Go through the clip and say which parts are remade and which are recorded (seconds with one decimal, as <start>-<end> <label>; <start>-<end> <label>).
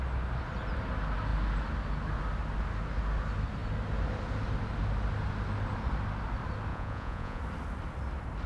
0.0-6.7 recorded; 6.7-7.4 remade; 7.4-8.5 recorded